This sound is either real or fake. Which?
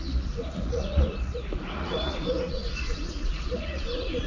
fake